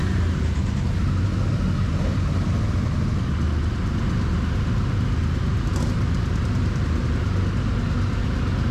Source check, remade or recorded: recorded